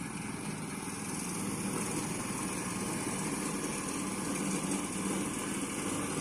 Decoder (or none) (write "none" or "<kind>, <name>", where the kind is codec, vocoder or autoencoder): none